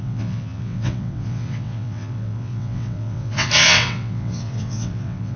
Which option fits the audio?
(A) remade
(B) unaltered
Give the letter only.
A